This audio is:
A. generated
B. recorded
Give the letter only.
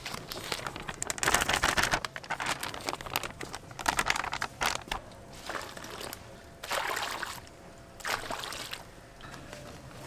B